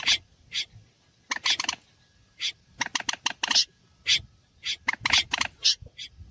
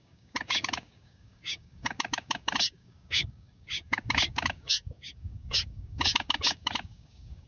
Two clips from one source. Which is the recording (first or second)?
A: first